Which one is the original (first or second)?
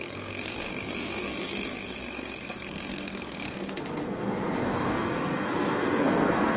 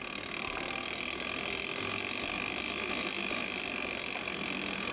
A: second